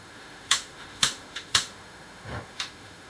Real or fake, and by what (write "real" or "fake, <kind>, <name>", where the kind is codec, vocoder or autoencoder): fake, autoencoder, DAC-VAE